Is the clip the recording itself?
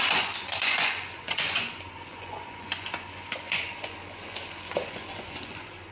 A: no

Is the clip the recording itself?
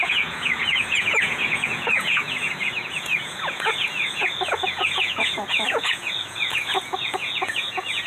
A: no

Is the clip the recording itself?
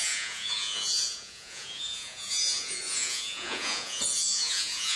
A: no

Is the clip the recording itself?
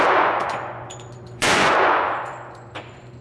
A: no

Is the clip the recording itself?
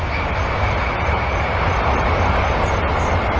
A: yes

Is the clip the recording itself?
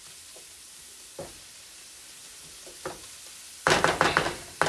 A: yes